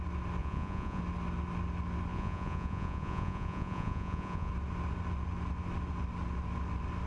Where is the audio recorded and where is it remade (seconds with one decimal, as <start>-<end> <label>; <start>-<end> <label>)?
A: 0.0-0.4 recorded; 0.4-1.0 remade; 1.0-2.1 recorded; 2.1-4.5 remade; 4.5-7.1 recorded